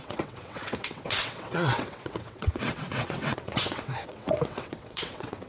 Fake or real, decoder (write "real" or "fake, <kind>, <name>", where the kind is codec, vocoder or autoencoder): fake, vocoder, WaveNeXt